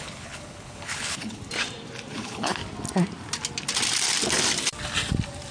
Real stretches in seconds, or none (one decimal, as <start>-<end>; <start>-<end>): 1.4-2.1; 2.6-5.5